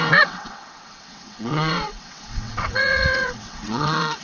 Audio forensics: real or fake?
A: fake